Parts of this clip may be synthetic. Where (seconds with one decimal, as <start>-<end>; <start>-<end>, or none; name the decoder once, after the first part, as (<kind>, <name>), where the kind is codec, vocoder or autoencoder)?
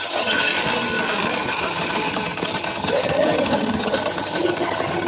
0.0-0.5 (vocoder, HiFi-GAN); 1.5-5.1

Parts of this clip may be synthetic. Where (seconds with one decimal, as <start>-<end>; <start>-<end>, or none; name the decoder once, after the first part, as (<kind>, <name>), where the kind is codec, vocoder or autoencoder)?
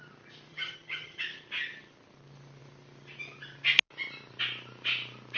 0.5-1.2 (vocoder, HiFi-GAN)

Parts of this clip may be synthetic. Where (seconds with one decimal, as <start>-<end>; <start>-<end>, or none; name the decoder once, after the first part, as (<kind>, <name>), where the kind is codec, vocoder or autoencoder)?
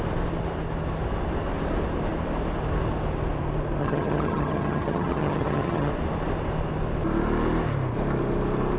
3.8-5.9 (vocoder, HiFi-GAN)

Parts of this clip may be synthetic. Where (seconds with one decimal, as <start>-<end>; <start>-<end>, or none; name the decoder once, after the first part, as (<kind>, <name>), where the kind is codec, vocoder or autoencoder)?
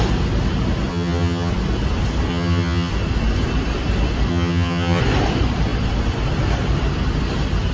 0.9-1.5 (vocoder, HiFi-GAN); 2.3-2.9; 4.3-5.0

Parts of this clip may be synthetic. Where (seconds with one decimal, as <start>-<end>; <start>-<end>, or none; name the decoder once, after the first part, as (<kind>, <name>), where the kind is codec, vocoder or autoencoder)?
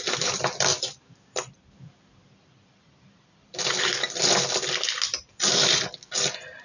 none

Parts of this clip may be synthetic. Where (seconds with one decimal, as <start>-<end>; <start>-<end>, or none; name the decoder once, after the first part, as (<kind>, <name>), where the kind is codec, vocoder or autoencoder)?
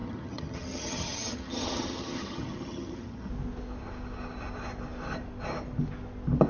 0.0-3.3 (vocoder, HiFi-GAN)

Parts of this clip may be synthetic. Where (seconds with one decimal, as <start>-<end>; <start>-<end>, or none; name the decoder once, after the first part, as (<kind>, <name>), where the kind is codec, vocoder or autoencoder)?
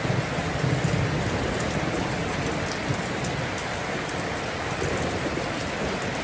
none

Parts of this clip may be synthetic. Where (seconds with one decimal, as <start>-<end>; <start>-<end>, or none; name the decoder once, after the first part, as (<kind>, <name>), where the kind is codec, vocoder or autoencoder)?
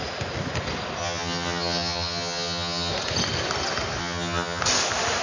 1.0-2.9 (vocoder, HiFi-GAN); 4.0-4.6